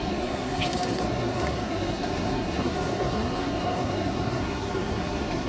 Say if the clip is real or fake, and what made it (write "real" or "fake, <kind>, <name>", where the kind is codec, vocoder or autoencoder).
fake, codec, SNAC